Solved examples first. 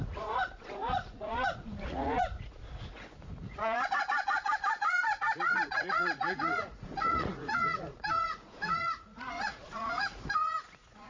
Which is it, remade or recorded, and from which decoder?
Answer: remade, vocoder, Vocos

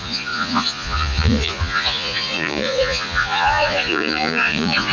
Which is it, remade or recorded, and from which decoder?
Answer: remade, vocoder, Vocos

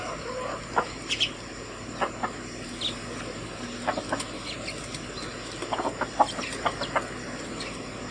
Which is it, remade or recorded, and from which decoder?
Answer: recorded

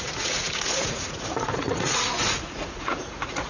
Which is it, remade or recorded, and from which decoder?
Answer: remade, vocoder, Vocos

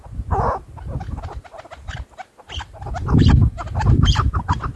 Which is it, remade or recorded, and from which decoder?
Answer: recorded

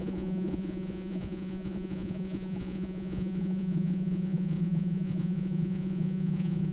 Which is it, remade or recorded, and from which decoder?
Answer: remade, vocoder, Vocos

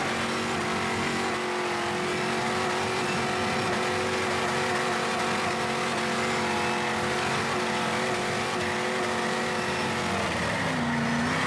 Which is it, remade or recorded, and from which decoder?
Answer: recorded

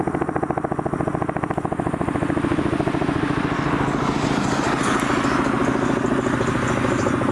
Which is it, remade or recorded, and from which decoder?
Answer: recorded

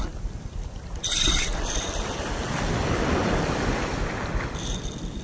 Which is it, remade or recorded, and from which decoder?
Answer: recorded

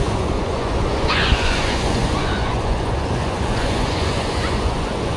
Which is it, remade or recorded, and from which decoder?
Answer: remade, vocoder, Vocos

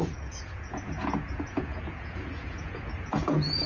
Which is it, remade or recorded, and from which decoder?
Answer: remade, vocoder, Vocos